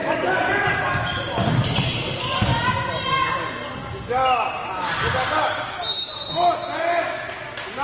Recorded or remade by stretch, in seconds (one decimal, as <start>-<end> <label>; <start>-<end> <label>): 0.0-7.8 recorded